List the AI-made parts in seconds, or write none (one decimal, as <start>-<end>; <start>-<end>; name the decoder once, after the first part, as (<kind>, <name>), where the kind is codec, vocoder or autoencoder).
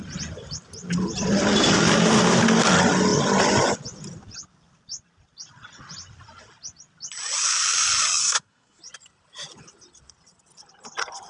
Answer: 8.2-8.8 (codec, SNAC)